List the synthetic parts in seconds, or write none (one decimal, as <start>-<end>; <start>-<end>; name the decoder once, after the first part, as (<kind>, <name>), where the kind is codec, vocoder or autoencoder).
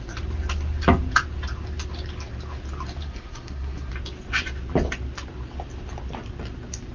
3.0-3.9 (codec, SNAC)